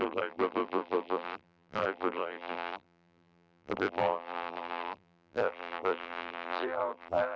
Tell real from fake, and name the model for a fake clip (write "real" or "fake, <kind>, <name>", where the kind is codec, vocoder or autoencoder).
fake, vocoder, BigVGAN v2